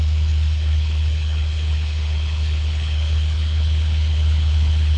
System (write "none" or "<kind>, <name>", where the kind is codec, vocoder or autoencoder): codec, HILCodec